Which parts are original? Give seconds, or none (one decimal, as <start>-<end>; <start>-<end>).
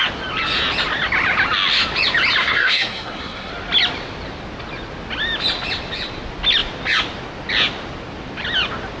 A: 0.0-2.4; 3.5-9.0